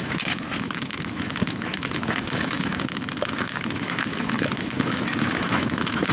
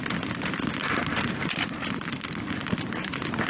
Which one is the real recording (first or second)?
second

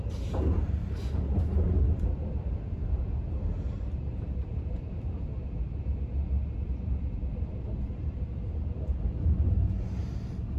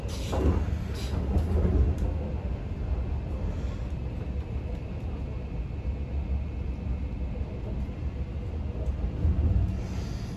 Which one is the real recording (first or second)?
second